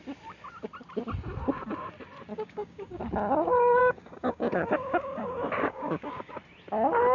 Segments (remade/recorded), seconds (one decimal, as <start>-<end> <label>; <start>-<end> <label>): 0.0-2.3 recorded; 2.3-3.0 remade; 3.0-3.8 recorded; 3.8-6.3 remade; 6.3-7.1 recorded